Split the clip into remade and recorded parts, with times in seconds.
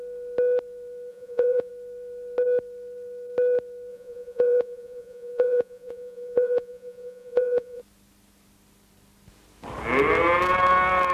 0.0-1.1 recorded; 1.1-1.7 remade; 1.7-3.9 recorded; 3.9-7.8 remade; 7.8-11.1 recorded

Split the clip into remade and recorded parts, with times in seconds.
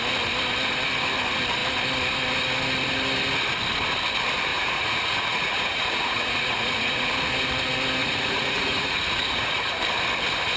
0.0-4.5 recorded; 4.5-7.1 remade; 7.1-8.0 recorded; 8.0-9.8 remade; 9.8-10.6 recorded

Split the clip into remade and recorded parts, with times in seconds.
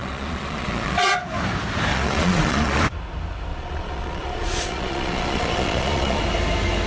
0.0-1.1 remade; 1.1-1.9 recorded; 1.9-2.8 remade; 2.8-3.5 recorded; 3.5-6.2 remade; 6.2-6.9 recorded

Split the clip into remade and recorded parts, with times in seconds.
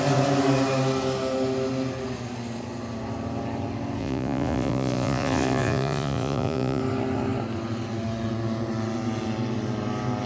0.0-4.0 recorded; 4.0-6.8 remade; 6.8-10.3 recorded